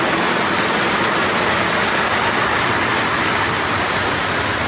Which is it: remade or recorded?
recorded